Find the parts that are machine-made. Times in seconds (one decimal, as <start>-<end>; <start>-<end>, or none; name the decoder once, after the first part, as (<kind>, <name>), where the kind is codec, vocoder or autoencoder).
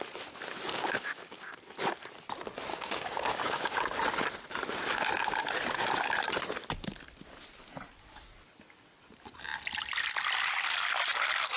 0.7-1.6 (codec, DAC); 2.7-3.7